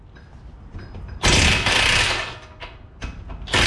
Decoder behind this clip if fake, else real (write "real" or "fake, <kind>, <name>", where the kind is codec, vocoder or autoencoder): real